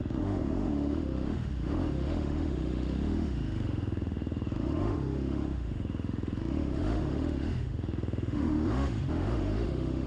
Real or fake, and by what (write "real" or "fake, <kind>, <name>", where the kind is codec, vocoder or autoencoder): fake, autoencoder, DAC-VAE